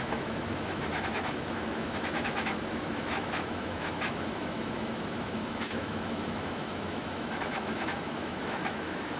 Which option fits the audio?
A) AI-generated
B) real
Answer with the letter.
A